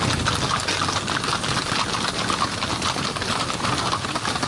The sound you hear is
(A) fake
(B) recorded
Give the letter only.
B